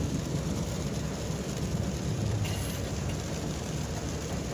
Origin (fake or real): real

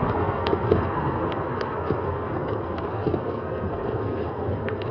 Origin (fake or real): fake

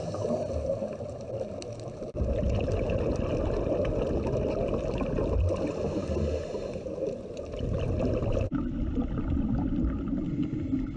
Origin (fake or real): real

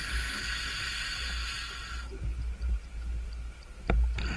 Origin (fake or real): real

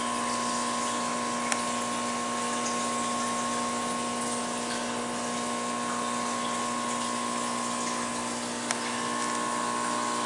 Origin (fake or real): real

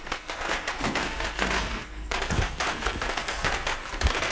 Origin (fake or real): fake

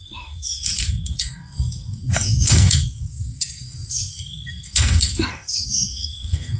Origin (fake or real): fake